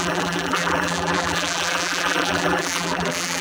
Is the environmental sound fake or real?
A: fake